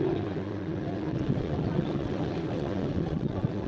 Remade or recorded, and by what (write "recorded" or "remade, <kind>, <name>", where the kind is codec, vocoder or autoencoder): remade, vocoder, WaveNeXt